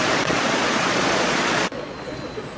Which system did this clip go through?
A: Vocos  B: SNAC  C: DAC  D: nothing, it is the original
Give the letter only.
A